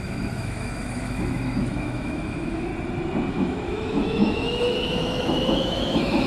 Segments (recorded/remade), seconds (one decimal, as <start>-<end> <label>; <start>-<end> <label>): 0.0-2.7 remade; 2.7-3.3 recorded; 3.3-6.3 remade